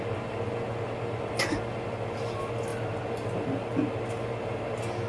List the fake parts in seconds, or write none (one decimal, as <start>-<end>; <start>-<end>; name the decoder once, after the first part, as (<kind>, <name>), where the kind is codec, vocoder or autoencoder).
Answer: none